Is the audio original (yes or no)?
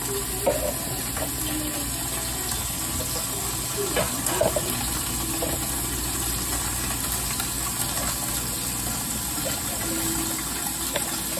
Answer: yes